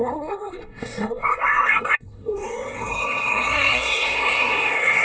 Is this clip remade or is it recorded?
remade